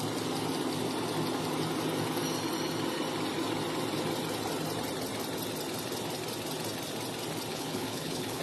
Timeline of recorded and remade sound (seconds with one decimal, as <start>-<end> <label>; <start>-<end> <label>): 0.0-7.5 recorded; 7.5-8.4 remade